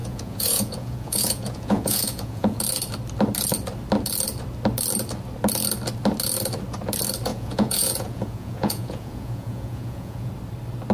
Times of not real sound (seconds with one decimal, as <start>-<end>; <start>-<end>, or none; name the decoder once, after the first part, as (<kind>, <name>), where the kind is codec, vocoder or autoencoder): 0.0-2.6 (vocoder, Vocos); 7.3-10.3